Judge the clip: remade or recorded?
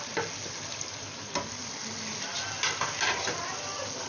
recorded